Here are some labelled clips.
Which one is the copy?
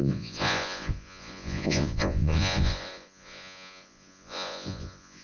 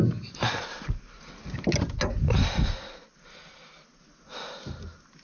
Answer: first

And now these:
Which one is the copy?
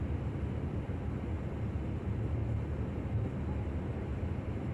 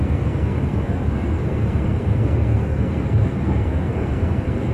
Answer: second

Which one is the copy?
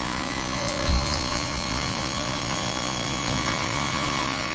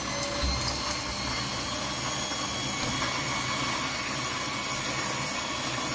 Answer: first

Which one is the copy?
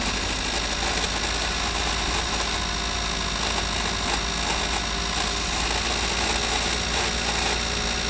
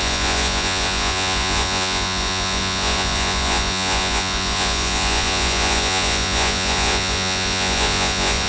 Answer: second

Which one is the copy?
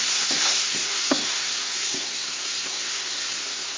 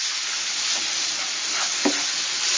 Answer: first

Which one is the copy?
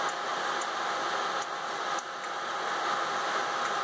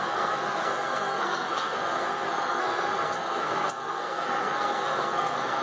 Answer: second